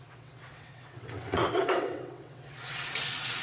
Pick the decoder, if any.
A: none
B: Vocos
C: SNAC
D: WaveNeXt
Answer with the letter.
D